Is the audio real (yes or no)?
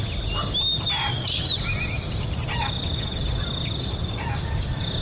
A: yes